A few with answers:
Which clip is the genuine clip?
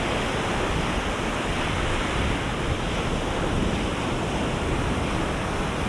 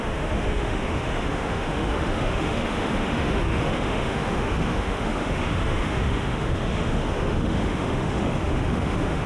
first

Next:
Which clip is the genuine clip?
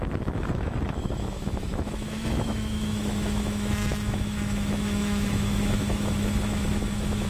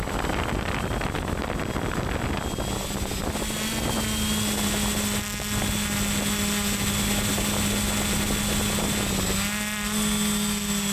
second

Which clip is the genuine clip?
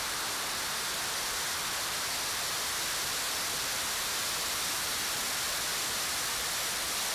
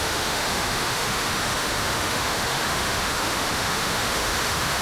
first